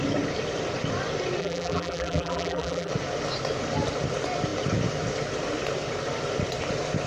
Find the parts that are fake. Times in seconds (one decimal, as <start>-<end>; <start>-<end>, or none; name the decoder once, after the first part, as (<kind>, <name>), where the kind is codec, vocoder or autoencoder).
1.4-2.9 (vocoder, BigVGAN v2)